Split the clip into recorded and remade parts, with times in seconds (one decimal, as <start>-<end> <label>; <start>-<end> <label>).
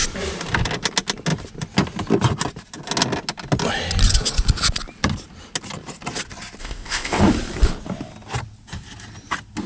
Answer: 0.0-6.6 recorded; 6.6-7.2 remade; 7.2-9.7 recorded